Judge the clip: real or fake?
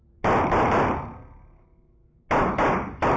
real